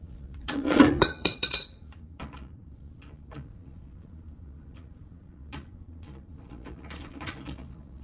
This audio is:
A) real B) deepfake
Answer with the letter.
B